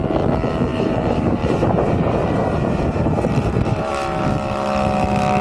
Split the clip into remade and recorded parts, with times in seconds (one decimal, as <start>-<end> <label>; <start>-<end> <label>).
0.0-0.7 recorded; 0.7-3.9 remade; 3.9-5.4 recorded